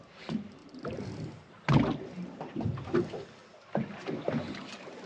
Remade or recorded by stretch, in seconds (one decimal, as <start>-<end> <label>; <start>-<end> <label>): 0.0-0.6 recorded; 0.6-1.5 remade; 1.5-5.1 recorded